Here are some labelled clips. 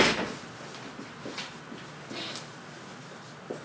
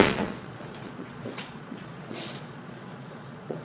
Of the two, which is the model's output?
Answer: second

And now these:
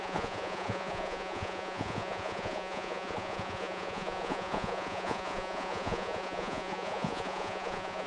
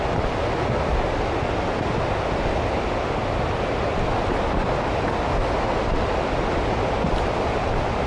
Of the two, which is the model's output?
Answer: first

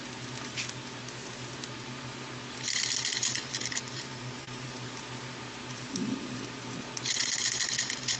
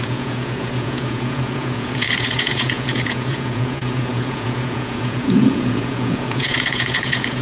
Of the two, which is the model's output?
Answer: second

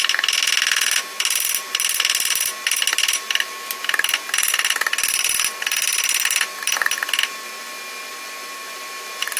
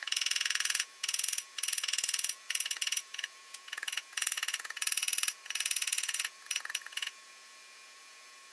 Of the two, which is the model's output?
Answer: second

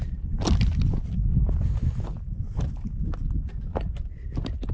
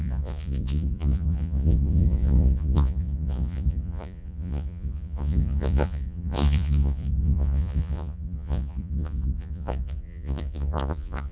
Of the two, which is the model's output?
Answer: second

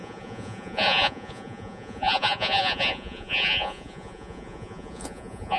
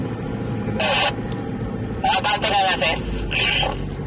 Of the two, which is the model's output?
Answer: first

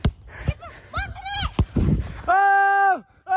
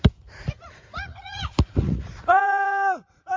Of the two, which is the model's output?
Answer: second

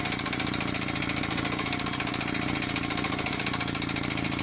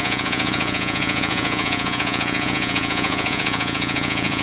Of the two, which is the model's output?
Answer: second